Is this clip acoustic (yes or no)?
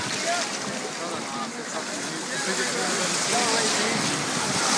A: yes